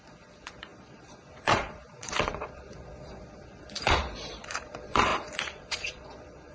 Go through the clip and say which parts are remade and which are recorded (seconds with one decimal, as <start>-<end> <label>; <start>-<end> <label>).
0.0-6.5 remade